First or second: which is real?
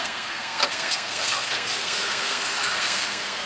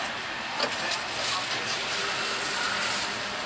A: second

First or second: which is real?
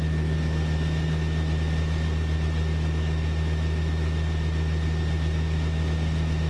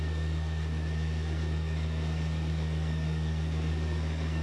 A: first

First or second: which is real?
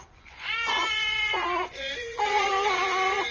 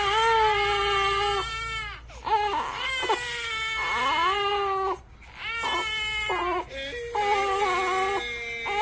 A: second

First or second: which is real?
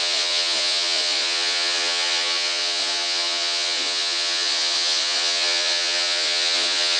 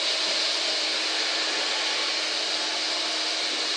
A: second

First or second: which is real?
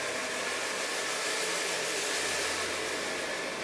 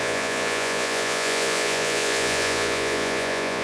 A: first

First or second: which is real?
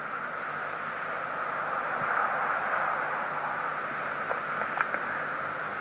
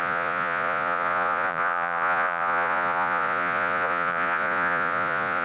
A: first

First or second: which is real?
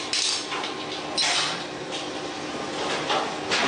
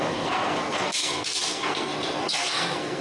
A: first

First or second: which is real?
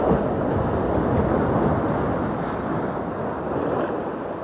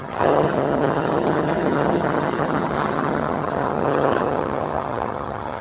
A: first